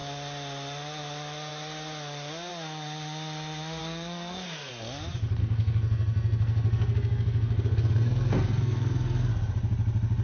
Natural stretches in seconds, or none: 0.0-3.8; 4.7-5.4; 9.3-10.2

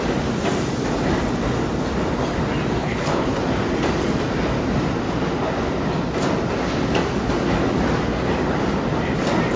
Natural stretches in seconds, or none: 0.0-2.8; 3.4-9.6

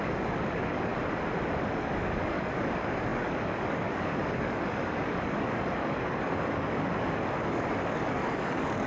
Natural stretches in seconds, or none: 0.9-1.7

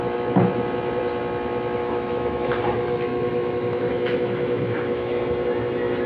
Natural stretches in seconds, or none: 0.0-1.8; 2.5-3.1; 5.2-6.1

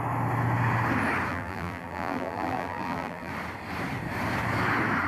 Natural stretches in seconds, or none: 0.0-1.3; 3.3-5.1